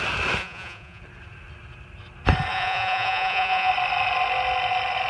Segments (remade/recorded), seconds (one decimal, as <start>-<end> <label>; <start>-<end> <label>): 0.0-0.4 recorded; 0.4-1.0 remade; 1.0-2.5 recorded; 2.5-3.7 remade; 3.7-5.1 recorded